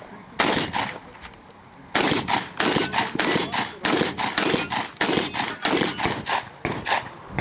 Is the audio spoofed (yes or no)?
no